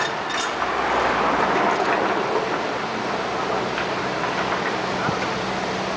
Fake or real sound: real